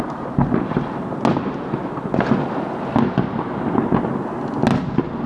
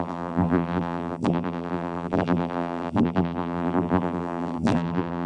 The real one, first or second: first